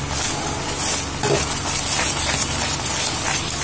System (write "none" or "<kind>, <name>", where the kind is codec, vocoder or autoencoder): none